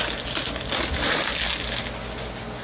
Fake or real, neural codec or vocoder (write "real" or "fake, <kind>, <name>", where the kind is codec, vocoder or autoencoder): real